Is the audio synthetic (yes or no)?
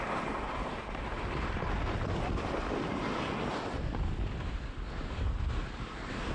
no